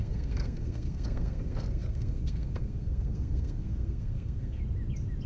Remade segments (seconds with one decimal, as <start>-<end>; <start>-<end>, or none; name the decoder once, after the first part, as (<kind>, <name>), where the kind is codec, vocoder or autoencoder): 0.0-4.6 (codec, SNAC)